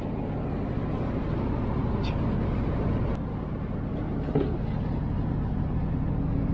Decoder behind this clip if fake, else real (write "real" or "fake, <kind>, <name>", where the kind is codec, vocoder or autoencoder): real